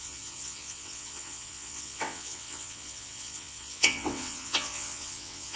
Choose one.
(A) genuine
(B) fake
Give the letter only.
B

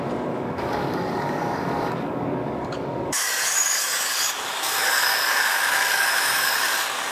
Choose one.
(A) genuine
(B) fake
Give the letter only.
B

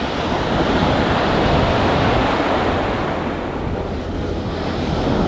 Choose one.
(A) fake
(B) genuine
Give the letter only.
B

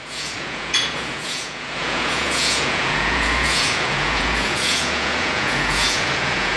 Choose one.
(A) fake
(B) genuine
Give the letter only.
A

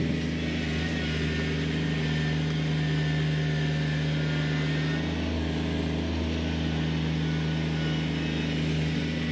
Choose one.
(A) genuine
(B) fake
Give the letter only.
A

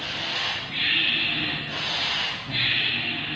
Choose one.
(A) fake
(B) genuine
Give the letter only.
B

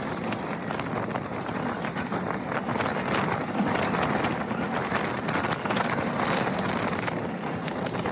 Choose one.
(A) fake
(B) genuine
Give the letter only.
B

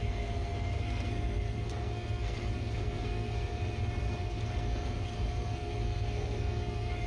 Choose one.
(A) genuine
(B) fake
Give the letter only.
B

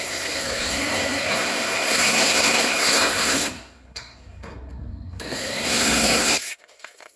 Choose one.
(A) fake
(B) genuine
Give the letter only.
A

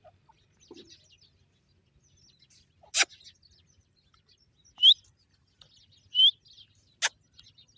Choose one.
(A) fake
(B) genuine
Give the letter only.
B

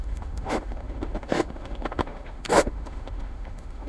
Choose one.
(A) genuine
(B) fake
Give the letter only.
B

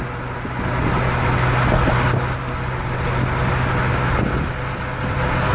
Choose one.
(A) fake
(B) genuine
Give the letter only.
B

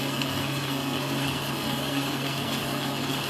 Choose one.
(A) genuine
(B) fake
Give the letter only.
B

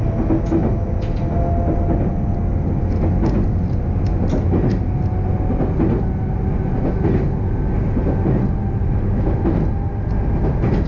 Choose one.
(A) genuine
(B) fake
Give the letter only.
A